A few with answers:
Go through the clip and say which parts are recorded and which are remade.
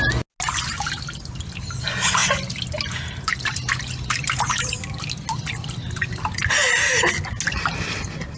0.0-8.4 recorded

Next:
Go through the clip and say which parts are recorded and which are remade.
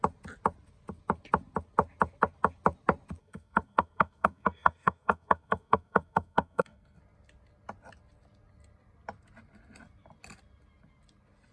0.0-3.2 recorded; 3.2-7.0 remade; 7.0-11.5 recorded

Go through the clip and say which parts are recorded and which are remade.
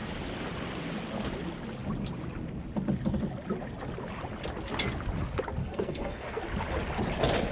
0.0-5.6 recorded; 5.6-6.4 remade; 6.4-7.5 recorded